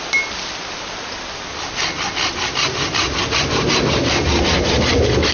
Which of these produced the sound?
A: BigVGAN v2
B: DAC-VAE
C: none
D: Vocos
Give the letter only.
C